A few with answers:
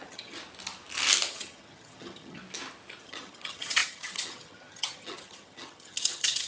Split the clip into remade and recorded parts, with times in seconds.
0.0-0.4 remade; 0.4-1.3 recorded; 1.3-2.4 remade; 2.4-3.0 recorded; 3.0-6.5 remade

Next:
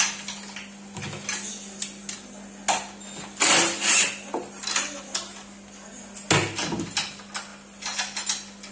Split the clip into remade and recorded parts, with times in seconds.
0.0-8.7 recorded

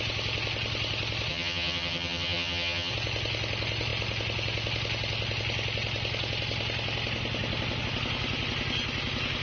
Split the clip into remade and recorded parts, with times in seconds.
0.0-1.3 recorded; 1.3-2.9 remade; 2.9-9.4 recorded

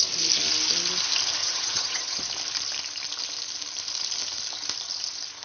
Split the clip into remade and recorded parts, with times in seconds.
0.0-1.4 recorded; 1.4-2.2 remade; 2.2-5.4 recorded

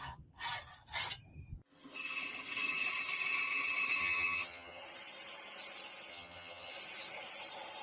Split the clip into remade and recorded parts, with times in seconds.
0.0-4.0 recorded; 4.0-4.8 remade; 4.8-6.1 recorded; 6.1-6.7 remade; 6.7-7.8 recorded